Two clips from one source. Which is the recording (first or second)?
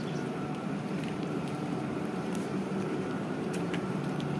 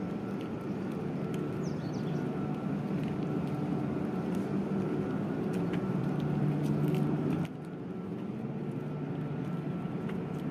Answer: second